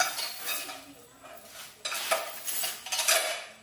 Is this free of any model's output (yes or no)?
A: yes